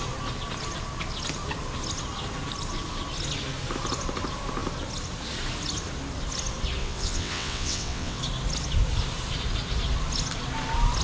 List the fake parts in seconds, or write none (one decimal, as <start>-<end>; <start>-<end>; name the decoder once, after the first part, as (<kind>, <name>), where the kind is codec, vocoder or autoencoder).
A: 6.8-8.2 (vocoder, WaveNeXt)

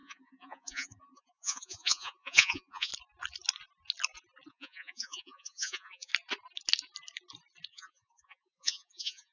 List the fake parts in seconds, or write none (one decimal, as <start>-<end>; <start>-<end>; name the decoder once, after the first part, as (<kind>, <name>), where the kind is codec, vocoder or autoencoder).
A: 0.0-2.9 (vocoder, Vocos); 4.5-6.1; 7.7-9.3